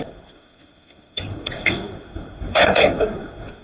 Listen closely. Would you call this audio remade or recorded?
remade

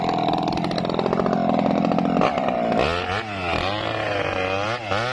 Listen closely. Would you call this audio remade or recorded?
recorded